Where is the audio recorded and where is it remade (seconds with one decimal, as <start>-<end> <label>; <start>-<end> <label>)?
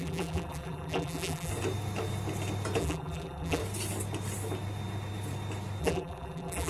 0.0-1.5 remade; 1.5-2.8 recorded; 2.8-3.6 remade; 3.6-5.8 recorded; 5.8-6.7 remade